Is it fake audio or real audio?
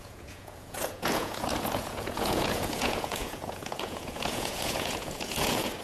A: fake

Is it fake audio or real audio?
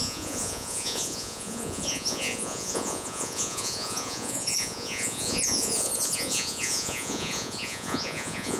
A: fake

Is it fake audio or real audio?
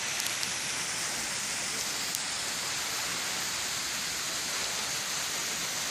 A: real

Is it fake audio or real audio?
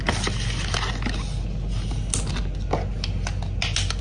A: real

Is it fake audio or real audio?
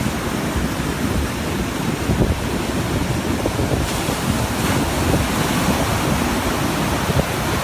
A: real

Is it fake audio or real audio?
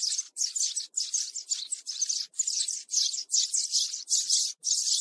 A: real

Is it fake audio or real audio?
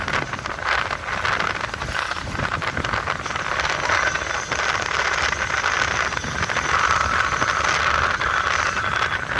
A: real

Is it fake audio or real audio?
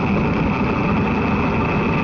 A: real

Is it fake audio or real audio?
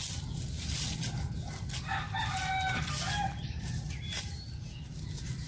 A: real